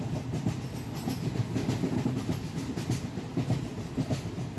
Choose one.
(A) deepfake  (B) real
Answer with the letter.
B